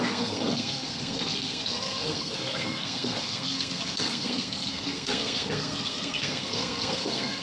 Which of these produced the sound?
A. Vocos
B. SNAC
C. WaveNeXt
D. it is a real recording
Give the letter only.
B